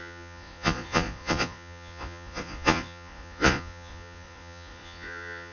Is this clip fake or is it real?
fake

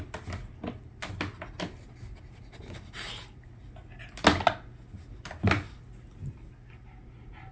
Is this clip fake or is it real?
real